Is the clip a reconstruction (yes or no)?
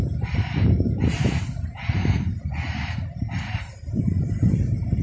yes